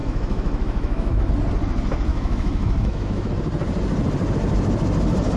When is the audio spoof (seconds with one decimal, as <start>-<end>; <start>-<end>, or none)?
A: 0.0-1.3; 2.1-3.3